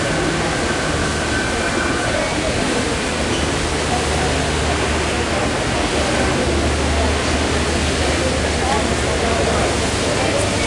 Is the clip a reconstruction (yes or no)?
no